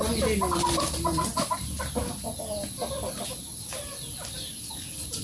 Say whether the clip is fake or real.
real